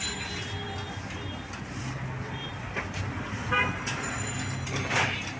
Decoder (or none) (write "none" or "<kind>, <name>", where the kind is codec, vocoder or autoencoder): none